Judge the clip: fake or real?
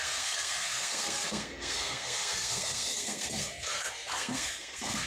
fake